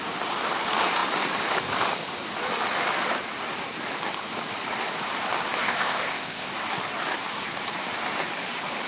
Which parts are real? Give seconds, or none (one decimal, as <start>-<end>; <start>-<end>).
0.0-5.6; 6.5-8.9